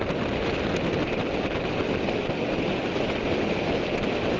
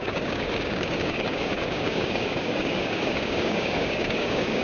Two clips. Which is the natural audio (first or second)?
first